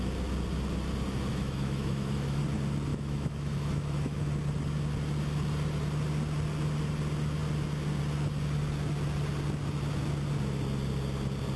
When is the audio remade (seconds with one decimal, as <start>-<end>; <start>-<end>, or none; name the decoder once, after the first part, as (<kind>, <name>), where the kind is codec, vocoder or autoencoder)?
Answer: 1.3-2.4 (autoencoder, DAC-VAE); 2.9-4.3